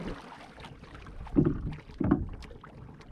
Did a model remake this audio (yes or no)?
no